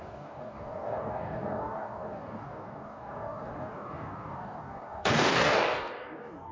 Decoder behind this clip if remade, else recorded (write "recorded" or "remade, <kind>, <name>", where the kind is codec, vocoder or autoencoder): remade, codec, DAC